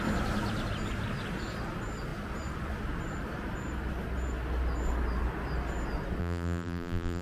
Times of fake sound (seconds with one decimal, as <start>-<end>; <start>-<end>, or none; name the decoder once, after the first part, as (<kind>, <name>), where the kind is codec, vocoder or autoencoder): 6.2-7.2 (vocoder, BigVGAN v2)